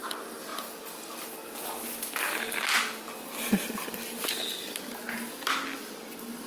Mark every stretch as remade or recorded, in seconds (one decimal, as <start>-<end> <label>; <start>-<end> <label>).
0.0-6.5 recorded